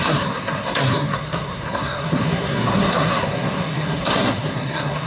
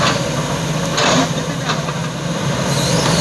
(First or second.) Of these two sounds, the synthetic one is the first